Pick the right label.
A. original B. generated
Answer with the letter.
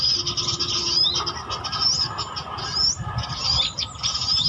A